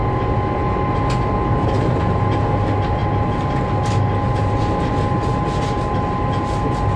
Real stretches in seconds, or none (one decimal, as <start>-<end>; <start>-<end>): 0.0-7.0